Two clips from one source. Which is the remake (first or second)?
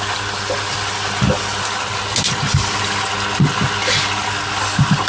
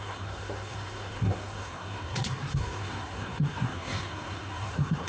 second